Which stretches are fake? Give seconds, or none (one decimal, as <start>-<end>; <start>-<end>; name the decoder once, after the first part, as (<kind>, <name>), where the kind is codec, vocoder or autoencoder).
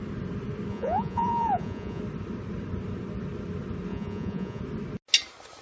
0.7-2.0 (vocoder, Vocos); 3.9-4.6